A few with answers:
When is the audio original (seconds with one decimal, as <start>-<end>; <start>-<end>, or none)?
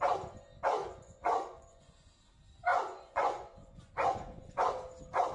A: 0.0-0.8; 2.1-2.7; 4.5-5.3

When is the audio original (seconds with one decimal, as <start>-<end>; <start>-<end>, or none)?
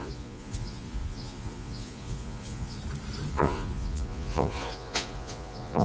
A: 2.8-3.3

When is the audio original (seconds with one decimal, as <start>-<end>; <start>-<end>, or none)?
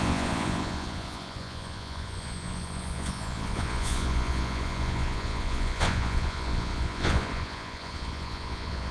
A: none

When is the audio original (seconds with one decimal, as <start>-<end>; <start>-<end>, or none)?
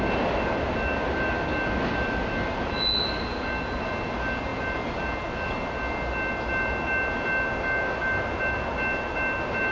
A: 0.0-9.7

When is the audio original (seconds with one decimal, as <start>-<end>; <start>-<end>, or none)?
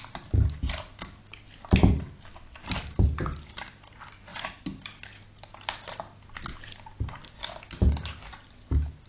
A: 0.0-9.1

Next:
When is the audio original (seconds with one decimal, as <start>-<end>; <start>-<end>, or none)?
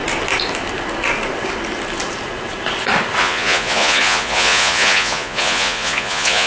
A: 0.0-3.2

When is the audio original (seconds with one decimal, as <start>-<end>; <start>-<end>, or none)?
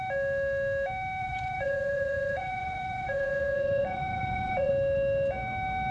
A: 0.0-1.2; 4.7-5.9